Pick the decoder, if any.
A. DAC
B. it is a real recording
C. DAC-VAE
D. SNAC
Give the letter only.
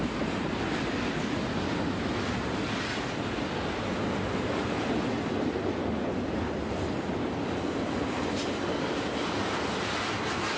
B